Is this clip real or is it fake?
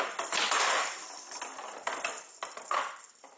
real